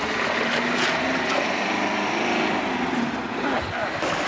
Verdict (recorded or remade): recorded